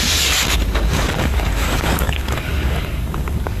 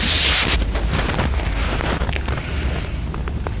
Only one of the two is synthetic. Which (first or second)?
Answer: first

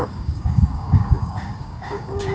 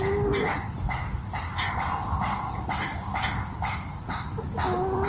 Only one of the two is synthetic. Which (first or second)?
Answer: first